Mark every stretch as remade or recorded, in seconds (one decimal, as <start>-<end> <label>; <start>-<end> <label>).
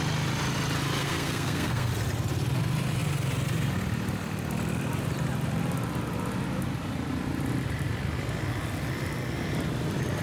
0.0-1.0 recorded; 1.0-1.9 remade; 1.9-10.2 recorded